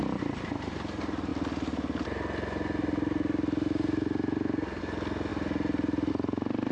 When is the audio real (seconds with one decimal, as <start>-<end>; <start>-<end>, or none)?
0.0-6.7